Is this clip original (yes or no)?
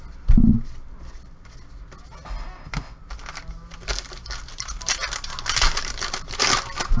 yes